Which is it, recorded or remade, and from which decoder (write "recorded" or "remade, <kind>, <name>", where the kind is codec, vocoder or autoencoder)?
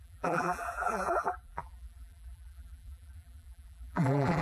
remade, vocoder, BigVGAN v2